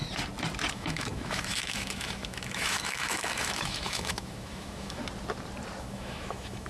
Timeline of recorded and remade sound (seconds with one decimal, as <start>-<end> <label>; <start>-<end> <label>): 0.0-0.7 recorded; 0.7-5.0 remade; 5.0-5.8 recorded; 5.8-6.7 remade